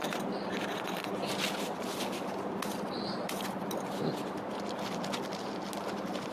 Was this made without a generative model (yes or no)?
yes